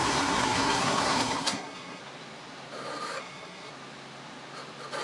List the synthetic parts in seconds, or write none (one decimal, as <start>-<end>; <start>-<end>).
0.0-2.0; 3.2-3.7